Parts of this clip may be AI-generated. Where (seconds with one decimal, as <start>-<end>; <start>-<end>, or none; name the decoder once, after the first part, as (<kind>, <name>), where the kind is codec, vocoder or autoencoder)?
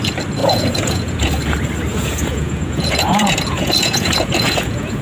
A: 0.4-1.3 (vocoder, Vocos); 1.9-5.0